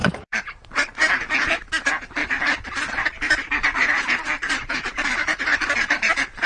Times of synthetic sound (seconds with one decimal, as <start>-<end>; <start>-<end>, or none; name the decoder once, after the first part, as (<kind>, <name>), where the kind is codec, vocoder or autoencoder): 0.0-1.0 (vocoder, BigVGAN v2); 2.2-6.1